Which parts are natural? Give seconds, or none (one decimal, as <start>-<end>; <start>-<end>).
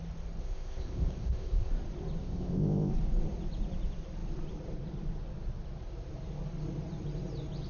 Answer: 0.0-0.4; 1.7-2.2; 2.9-7.7